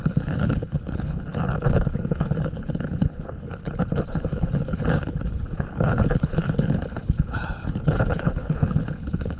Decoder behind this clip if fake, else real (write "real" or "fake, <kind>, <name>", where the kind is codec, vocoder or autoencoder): fake, codec, HILCodec